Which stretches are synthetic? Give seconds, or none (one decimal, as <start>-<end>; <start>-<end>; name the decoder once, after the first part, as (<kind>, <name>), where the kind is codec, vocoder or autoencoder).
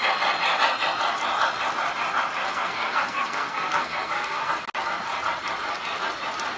2.4-4.5 (codec, SNAC)